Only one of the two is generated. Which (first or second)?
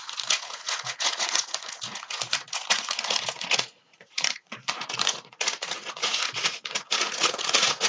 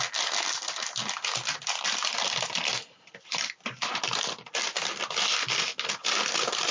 first